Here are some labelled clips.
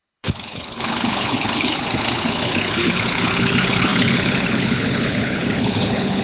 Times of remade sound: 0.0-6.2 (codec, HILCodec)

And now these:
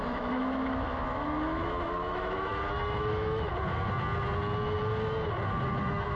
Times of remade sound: 0.0-3.5 (autoencoder, DAC-VAE); 5.8-6.2

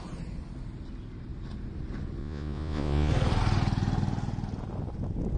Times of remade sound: 2.2-3.1 (vocoder, Vocos)

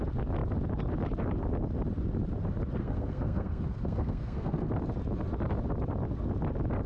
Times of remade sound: 2.8-4.7 (codec, SNAC)